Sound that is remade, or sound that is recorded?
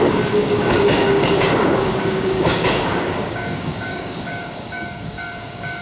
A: remade